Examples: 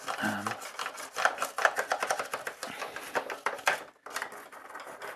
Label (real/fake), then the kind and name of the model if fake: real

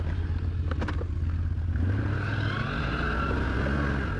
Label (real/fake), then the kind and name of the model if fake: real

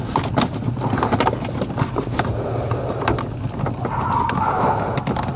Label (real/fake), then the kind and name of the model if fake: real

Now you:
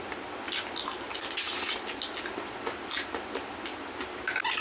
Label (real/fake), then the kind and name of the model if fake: real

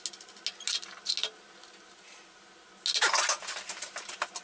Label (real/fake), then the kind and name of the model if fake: real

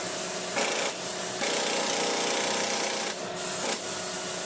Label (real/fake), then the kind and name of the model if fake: real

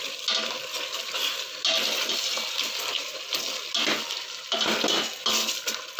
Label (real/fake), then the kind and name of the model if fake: real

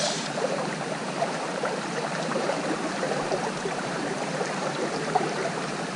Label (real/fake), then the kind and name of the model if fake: fake, vocoder, BigVGAN v2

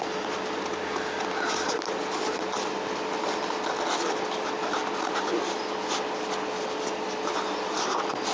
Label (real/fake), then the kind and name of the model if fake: real